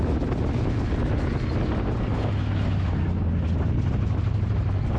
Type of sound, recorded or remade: recorded